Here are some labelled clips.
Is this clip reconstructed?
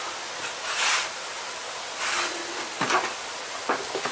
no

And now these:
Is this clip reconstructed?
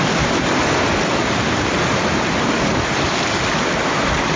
no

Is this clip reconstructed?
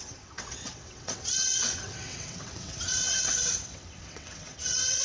yes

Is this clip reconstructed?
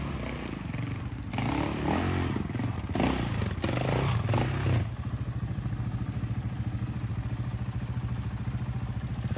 no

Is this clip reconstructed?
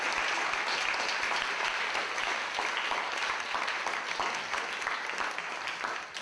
no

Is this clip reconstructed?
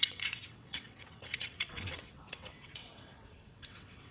yes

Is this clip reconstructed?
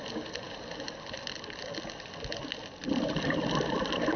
no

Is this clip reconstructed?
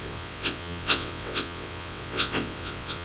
yes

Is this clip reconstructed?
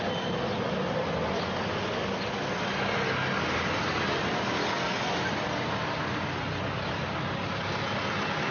no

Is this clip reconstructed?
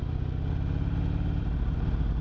no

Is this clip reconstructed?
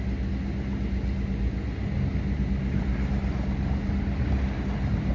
no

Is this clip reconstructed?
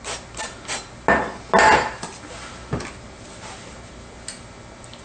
no